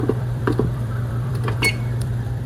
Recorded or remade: remade